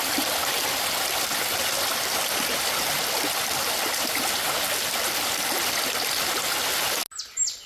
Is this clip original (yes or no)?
yes